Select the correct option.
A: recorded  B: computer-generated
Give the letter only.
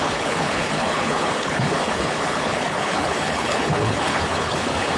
B